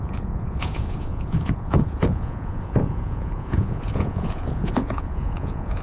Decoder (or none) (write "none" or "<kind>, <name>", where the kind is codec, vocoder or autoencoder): vocoder, Vocos